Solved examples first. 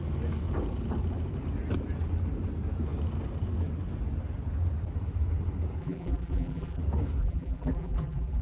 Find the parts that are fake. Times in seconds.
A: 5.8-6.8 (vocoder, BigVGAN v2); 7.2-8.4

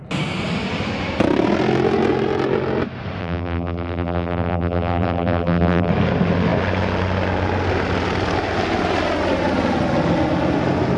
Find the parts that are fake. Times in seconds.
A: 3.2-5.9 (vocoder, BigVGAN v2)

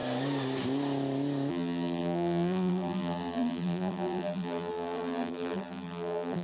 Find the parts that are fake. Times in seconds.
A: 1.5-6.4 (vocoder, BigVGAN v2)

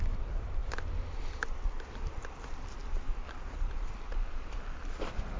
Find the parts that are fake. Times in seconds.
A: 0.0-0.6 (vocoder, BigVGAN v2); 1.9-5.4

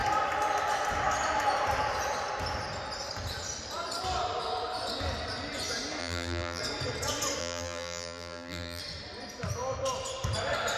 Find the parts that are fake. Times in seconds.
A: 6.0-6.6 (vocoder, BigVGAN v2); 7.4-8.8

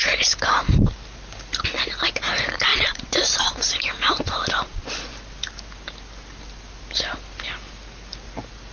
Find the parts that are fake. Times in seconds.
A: 2.7-3.8 (vocoder, BigVGAN v2); 4.7-5.3